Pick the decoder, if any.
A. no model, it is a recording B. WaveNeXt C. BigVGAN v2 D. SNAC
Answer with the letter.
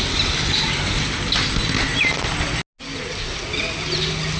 A